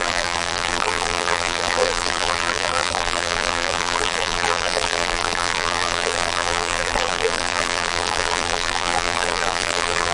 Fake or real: fake